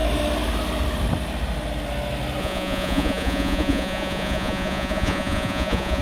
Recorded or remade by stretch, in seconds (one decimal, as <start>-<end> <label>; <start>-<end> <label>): 0.0-2.4 recorded; 2.4-6.0 remade